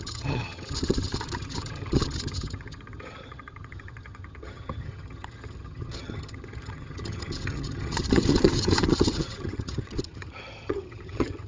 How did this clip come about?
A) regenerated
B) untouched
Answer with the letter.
A